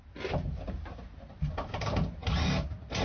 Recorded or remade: recorded